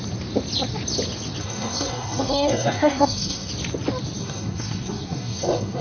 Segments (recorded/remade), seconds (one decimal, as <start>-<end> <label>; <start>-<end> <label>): 0.0-1.4 recorded; 1.4-3.5 remade; 3.5-4.2 recorded; 4.2-5.8 remade